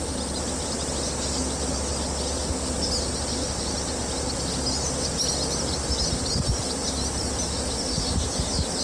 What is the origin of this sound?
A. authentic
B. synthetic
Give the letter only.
A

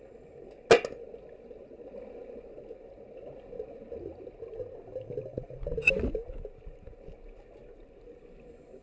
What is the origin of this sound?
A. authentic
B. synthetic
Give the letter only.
A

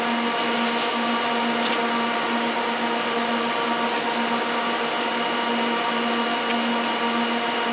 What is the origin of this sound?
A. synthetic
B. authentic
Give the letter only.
B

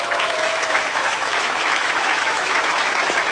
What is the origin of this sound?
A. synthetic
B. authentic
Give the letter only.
A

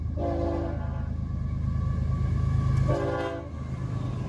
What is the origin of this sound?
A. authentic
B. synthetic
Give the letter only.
A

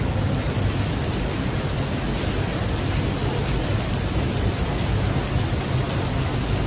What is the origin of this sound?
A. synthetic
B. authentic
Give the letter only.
B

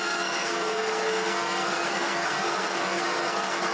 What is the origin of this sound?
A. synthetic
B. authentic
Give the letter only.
A